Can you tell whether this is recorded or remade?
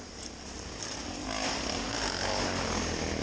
recorded